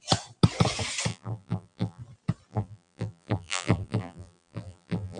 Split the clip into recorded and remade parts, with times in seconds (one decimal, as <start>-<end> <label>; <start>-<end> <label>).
0.0-1.1 recorded; 1.1-2.0 remade; 2.0-2.5 recorded; 2.5-5.2 remade